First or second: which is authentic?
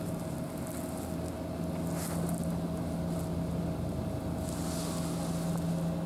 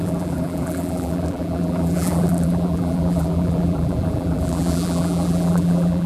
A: first